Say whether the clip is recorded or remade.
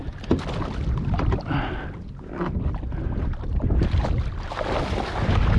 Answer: recorded